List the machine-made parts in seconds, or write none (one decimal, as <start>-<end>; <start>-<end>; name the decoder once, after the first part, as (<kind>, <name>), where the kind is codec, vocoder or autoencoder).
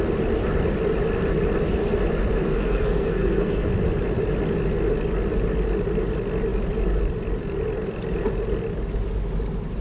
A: 2.5-3.7 (codec, SNAC)